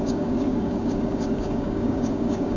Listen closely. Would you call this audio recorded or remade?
remade